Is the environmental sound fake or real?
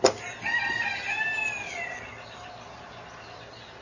real